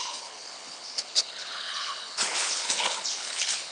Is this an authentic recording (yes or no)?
no